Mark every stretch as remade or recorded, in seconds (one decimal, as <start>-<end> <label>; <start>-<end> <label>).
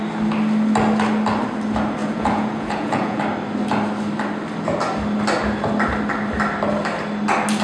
0.0-2.0 recorded; 2.0-3.2 remade; 3.2-7.6 recorded